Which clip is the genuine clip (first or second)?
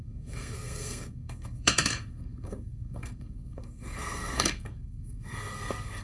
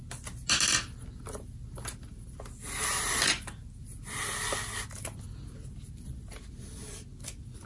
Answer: second